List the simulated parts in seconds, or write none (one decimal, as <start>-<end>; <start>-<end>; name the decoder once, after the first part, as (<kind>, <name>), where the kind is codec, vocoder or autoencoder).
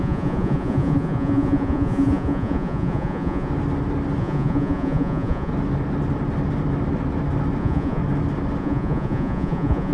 0.0-3.5 (vocoder, Vocos); 4.2-5.5; 7.6-8.0; 8.6-9.9